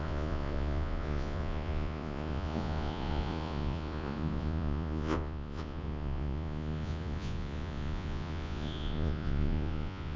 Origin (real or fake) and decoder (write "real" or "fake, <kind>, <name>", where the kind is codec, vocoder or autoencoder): fake, vocoder, Vocos